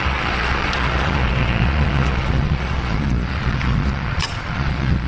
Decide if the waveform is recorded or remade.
remade